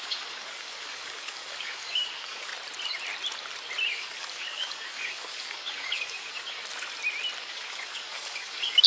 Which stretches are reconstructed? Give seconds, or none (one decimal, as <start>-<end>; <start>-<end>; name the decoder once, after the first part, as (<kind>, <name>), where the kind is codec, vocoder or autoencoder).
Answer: 0.0-2.5 (codec, DAC); 3.9-6.6; 7.4-8.9